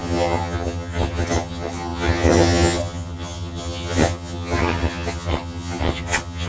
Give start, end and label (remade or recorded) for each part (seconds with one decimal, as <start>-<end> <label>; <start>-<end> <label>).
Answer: 0.0-6.5 remade